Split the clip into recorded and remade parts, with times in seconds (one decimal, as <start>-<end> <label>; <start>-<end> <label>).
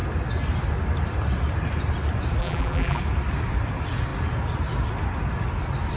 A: 0.0-2.4 recorded; 2.4-3.0 remade; 3.0-6.0 recorded